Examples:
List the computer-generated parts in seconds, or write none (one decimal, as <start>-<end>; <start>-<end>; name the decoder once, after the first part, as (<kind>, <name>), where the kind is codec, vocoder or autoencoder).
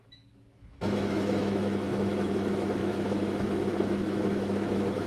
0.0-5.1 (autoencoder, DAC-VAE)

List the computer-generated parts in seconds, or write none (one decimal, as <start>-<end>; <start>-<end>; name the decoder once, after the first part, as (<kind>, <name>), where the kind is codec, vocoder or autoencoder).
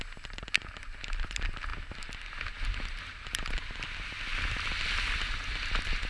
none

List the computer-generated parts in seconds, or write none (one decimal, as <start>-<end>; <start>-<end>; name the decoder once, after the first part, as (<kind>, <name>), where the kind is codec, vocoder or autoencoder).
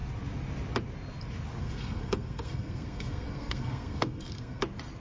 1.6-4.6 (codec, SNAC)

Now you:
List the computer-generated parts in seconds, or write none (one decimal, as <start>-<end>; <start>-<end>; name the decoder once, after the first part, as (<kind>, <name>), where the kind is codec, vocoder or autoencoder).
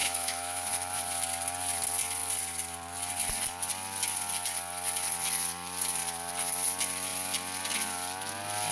0.0-0.7 (autoencoder, DAC-VAE)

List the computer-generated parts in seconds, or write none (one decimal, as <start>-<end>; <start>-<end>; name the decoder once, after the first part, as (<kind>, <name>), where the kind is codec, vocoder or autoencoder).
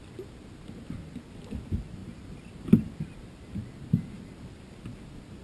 none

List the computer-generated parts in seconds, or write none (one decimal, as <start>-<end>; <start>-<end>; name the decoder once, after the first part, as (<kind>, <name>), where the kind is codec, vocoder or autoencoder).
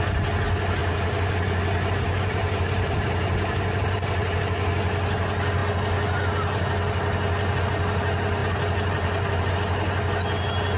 0.8-4.4 (vocoder, BigVGAN v2); 8.4-9.5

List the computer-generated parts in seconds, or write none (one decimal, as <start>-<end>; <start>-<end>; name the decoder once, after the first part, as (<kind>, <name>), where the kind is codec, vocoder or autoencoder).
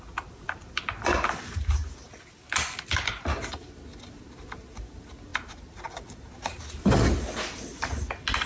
none